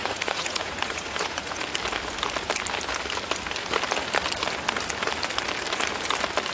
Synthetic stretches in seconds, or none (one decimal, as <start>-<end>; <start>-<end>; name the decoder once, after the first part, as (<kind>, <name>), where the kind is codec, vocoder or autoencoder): 0.0-1.6 (vocoder, Vocos)